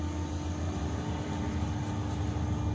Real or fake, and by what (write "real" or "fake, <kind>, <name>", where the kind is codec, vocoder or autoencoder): real